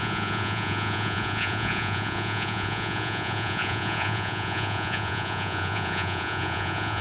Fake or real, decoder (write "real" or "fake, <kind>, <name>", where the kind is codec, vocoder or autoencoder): fake, vocoder, Vocos